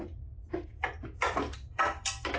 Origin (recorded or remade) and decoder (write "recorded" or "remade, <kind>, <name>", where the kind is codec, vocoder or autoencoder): recorded